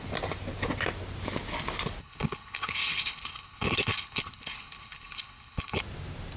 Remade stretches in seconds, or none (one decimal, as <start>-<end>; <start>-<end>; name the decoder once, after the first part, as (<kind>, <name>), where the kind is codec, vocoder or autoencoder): 2.0-5.8 (codec, HILCodec)